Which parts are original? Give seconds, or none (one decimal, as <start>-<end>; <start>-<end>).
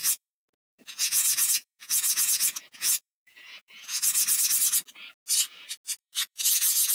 4.0-6.0